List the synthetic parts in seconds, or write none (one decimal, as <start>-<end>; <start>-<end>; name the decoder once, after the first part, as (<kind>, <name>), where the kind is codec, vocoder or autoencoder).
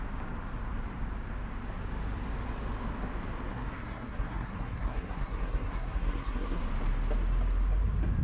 3.5-6.6 (codec, SNAC)